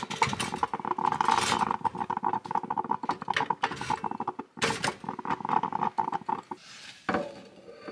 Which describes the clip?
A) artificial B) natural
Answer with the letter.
B